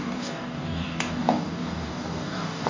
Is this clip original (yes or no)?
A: no